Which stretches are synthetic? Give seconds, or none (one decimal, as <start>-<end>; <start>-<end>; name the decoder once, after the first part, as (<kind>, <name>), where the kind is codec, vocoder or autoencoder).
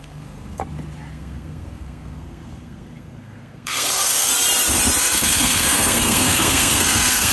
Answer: 0.0-0.6 (codec, SNAC); 1.1-4.3; 5.0-7.3